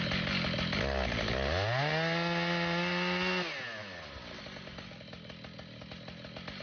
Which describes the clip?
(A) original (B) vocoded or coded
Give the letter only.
A